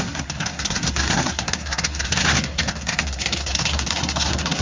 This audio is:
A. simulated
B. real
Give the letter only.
A